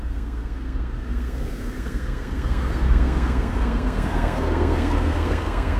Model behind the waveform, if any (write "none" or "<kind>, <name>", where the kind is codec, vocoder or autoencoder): codec, SNAC